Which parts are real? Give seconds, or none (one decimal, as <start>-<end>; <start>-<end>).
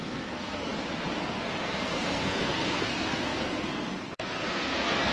0.7-1.2